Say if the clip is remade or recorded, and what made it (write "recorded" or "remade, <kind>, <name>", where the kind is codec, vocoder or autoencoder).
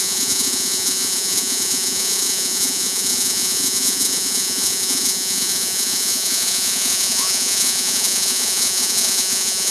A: remade, vocoder, Vocos